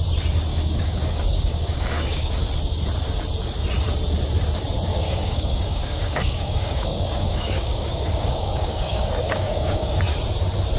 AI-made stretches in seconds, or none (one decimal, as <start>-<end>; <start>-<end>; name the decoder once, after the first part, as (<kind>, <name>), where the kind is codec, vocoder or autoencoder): 0.5-2.3 (codec, DAC); 4.9-10.0